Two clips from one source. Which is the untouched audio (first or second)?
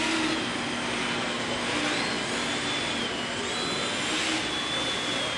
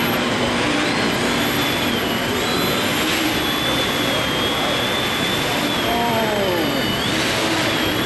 first